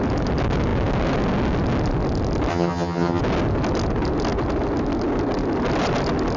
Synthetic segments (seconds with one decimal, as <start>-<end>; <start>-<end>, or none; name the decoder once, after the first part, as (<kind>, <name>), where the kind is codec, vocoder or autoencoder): 2.5-3.2 (vocoder, HiFi-GAN)